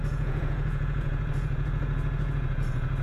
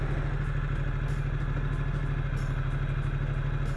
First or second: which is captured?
second